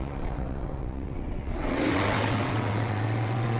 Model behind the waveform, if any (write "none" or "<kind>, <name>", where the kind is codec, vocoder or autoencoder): vocoder, WaveNeXt